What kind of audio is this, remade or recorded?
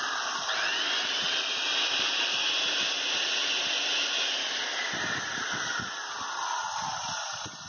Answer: recorded